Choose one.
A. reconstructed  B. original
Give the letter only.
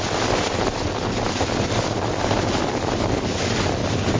B